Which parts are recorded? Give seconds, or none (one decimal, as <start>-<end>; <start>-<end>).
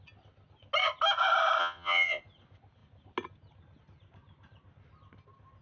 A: 0.0-1.6; 2.2-5.6